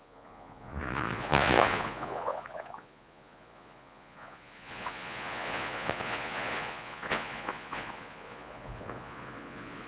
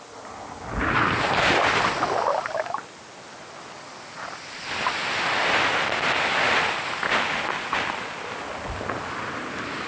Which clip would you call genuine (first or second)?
second